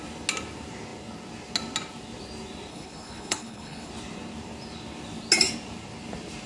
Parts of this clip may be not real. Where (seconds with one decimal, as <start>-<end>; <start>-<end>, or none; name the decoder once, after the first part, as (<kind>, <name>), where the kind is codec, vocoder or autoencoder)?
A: 2.7-3.9 (codec, HILCodec)